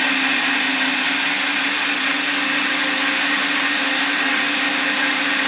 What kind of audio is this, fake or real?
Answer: real